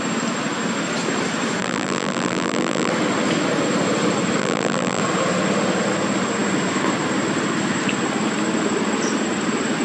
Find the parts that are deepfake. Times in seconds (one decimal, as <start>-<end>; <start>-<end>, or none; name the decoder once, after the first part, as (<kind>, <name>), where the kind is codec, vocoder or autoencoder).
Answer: 1.6-2.9 (vocoder, BigVGAN v2); 4.4-5.0